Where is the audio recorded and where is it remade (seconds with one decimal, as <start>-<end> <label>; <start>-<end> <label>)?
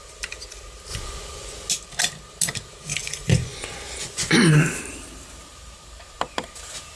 0.0-0.9 recorded; 0.9-1.7 remade; 1.7-3.0 recorded; 3.0-4.5 remade; 4.5-7.0 recorded